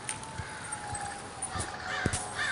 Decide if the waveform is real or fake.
real